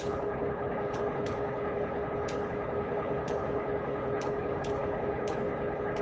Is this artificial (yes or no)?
yes